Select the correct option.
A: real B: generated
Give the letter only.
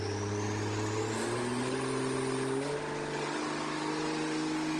A